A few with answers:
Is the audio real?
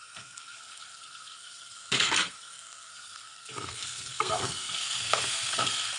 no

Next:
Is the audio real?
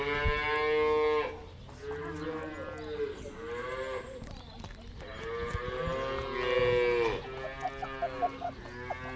yes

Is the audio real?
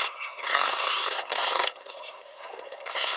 no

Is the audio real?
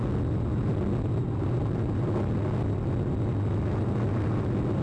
yes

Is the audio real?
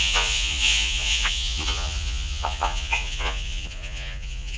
no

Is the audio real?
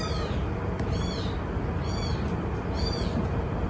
yes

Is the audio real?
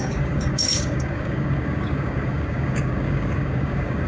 no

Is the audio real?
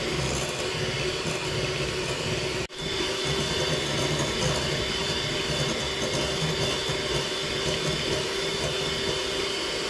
yes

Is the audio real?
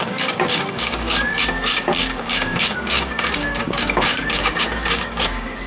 no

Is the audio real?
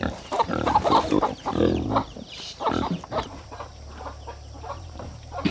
no